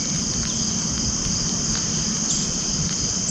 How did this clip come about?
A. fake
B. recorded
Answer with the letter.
B